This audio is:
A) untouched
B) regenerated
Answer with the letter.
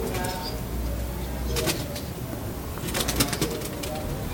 A